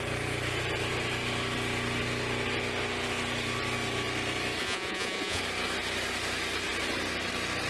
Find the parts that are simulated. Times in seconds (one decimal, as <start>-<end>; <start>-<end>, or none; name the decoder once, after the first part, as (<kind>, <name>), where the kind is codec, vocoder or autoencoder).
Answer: 4.6-5.4 (vocoder, Vocos)